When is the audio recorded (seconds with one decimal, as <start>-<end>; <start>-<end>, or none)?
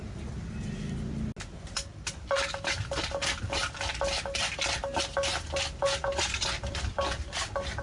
0.0-7.8